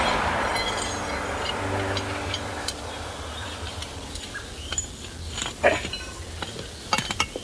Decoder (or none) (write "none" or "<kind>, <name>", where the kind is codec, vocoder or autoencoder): none